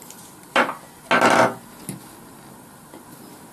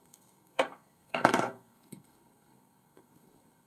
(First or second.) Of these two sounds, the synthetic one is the second